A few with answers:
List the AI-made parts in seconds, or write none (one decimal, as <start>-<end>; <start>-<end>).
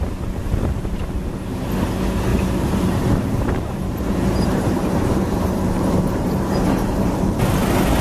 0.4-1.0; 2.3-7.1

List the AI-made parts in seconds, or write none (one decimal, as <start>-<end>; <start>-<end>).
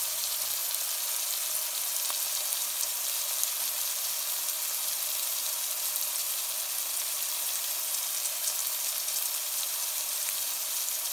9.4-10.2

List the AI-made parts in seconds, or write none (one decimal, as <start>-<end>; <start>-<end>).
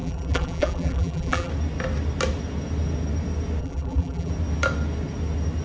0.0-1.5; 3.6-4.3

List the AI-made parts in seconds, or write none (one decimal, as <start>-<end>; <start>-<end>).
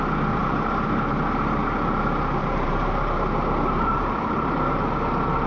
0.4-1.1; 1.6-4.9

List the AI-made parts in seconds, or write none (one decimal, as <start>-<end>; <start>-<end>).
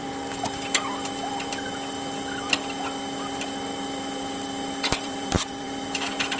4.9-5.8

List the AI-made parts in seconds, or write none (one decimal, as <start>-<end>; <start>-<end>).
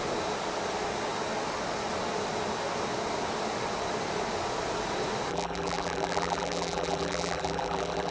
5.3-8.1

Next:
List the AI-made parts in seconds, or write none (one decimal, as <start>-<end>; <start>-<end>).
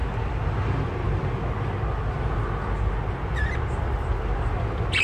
none